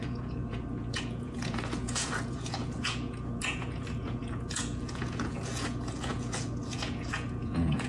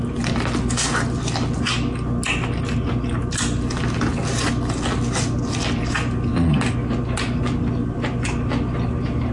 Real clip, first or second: second